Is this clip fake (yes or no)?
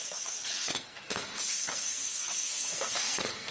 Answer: yes